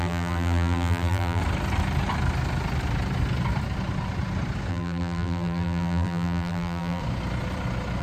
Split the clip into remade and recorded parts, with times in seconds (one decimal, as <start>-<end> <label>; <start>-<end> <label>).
0.0-1.4 remade; 1.4-4.7 recorded; 4.7-7.0 remade; 7.0-8.0 recorded